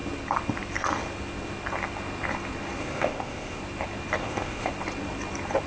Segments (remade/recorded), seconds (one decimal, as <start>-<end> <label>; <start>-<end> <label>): 0.0-2.8 recorded; 2.8-3.6 remade; 3.6-4.2 recorded; 4.2-4.7 remade; 4.7-5.7 recorded